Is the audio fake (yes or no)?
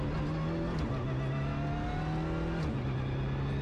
no